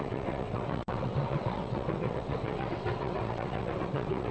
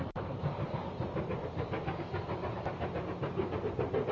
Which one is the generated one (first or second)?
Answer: first